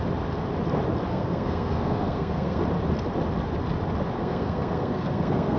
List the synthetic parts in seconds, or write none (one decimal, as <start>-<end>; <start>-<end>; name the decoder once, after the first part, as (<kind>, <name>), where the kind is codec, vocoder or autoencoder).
1.1-2.6 (codec, SNAC); 4.2-5.6